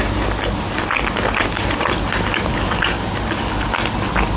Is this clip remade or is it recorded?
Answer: recorded